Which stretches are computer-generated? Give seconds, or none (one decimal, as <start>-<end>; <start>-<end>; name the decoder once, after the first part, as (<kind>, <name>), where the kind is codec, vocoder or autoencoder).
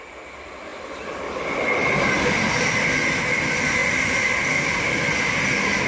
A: 3.8-5.2 (vocoder, BigVGAN v2)